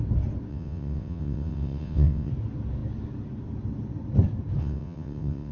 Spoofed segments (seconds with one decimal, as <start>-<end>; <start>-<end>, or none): 0.5-2.3; 4.6-5.5